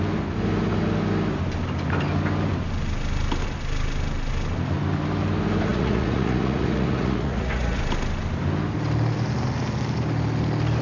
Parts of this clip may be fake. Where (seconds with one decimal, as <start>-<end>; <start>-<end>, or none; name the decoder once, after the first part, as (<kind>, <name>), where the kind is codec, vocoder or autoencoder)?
5.7-7.8 (vocoder, Vocos)